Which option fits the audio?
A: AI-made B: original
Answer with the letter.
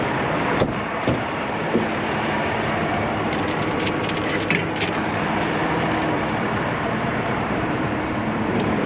A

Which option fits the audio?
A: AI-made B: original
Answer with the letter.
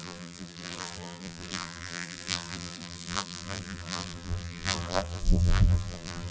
A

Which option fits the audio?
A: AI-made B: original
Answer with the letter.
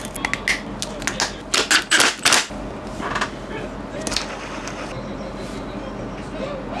B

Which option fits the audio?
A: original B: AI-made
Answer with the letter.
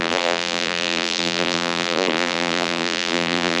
B